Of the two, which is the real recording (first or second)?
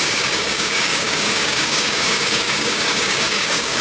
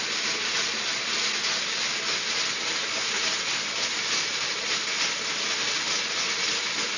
second